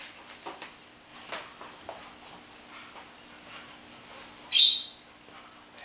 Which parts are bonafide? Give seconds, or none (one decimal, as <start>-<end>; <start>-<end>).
0.0-5.8